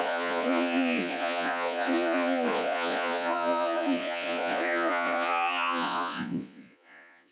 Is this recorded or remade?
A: remade